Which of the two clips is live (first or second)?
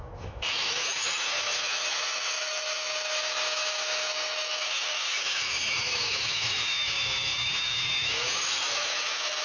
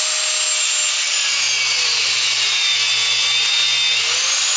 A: second